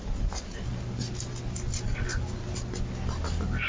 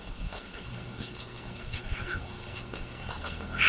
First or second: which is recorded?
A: first